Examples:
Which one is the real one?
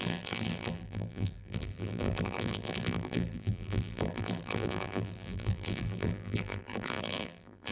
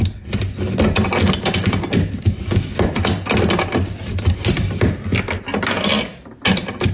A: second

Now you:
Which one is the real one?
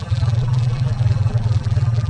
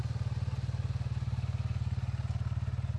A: second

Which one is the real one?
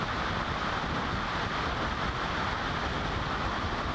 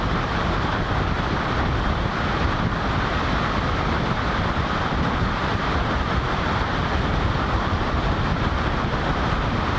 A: first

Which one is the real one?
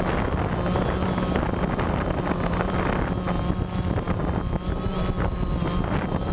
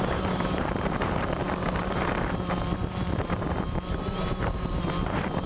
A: first